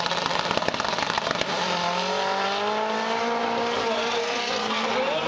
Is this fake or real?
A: real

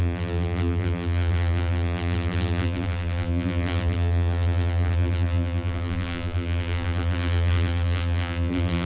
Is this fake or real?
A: fake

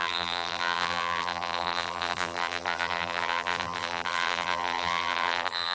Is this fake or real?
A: fake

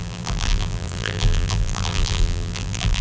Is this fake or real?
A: fake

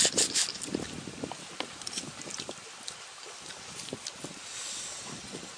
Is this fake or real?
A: real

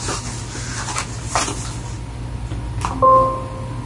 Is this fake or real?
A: real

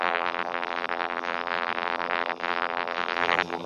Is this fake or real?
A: fake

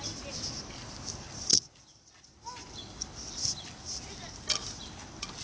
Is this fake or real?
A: real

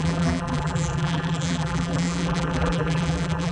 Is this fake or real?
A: fake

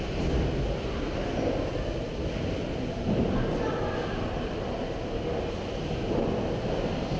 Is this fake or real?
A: real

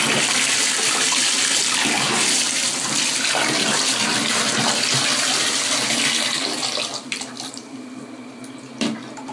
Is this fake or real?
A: fake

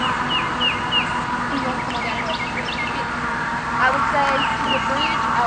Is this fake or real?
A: real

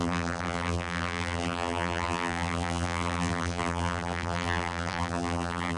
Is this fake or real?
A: fake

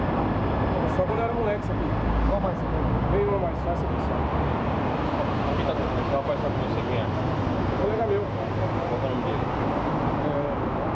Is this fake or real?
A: real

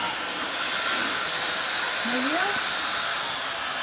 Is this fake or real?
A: real